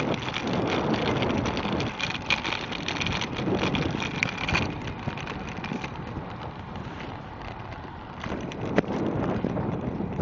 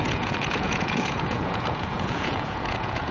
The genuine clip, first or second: first